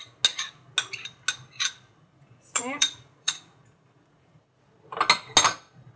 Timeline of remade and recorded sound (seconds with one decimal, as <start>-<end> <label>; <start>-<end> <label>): 0.0-2.0 recorded; 2.0-4.4 remade; 4.4-6.0 recorded